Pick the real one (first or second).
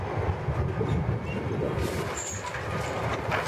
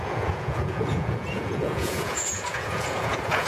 first